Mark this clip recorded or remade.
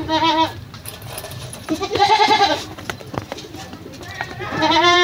remade